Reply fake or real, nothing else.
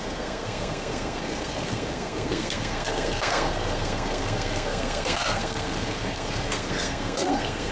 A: fake